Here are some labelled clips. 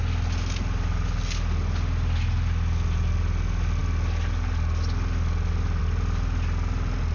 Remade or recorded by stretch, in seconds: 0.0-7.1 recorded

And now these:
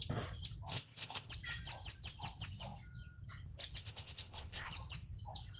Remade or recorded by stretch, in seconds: 0.0-0.7 recorded; 0.7-1.3 remade; 1.3-3.8 recorded; 3.8-4.7 remade; 4.7-5.6 recorded

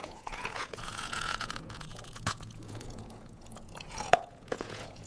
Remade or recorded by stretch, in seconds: 0.0-5.1 remade

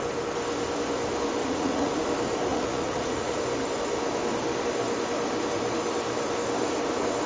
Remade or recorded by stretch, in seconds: 0.0-1.4 recorded; 1.4-1.9 remade; 1.9-2.5 recorded; 2.5-3.4 remade; 3.4-7.3 recorded